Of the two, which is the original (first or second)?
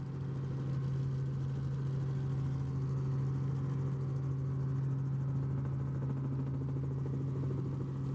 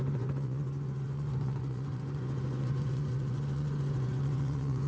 first